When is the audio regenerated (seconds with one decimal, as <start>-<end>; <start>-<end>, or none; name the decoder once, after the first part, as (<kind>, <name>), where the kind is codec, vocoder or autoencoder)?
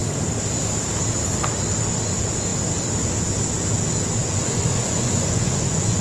4.2-6.0 (vocoder, Vocos)